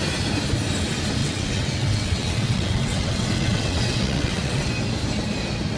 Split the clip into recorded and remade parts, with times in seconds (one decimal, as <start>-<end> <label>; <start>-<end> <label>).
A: 0.0-1.2 recorded; 1.2-4.7 remade; 4.7-5.8 recorded